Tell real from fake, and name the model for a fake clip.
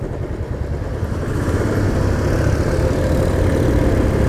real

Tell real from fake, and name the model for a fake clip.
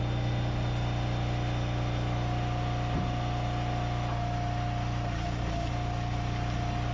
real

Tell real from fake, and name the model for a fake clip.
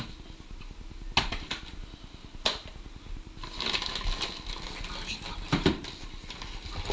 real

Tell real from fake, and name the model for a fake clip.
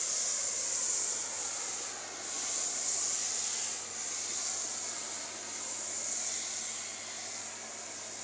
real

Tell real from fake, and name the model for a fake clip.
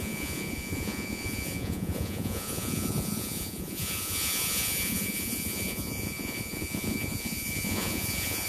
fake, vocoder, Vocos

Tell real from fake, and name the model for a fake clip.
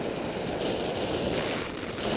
real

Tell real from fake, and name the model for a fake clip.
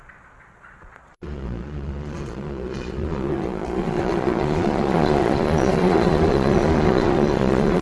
fake, vocoder, Vocos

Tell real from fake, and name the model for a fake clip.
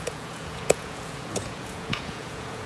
fake, vocoder, Vocos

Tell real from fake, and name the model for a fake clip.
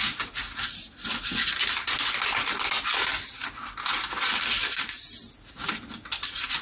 real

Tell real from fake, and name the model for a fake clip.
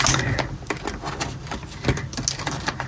real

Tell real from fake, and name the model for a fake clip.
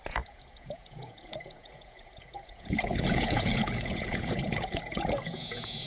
fake, vocoder, Vocos